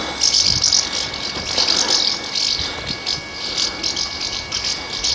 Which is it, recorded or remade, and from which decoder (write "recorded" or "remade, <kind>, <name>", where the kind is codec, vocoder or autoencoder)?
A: recorded